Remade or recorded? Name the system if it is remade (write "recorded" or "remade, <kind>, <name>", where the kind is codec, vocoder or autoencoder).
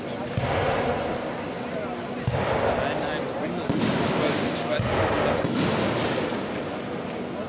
recorded